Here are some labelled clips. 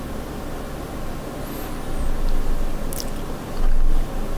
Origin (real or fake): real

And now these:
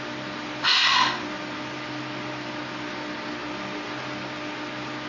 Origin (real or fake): real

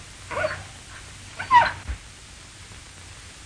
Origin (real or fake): real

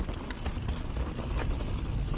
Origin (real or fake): real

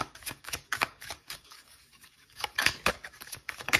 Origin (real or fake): fake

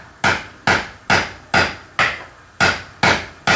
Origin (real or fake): real